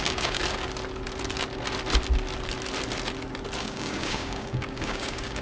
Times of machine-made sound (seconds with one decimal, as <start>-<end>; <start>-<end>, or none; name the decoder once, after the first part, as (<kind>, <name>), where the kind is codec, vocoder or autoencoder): 0.0-0.4 (codec, DAC); 3.6-5.4